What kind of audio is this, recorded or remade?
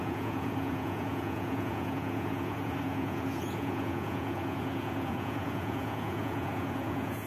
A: remade